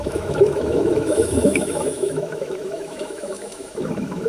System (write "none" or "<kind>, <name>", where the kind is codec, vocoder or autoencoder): autoencoder, DAC-VAE